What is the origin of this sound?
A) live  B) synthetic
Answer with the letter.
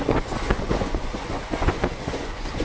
B